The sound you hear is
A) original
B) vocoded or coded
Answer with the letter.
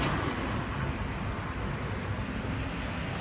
A